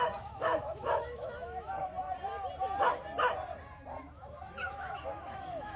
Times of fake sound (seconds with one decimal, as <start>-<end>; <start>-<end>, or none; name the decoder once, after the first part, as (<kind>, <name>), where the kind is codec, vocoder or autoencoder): 0.0-1.9 (autoencoder, DAC-VAE); 4.0-5.8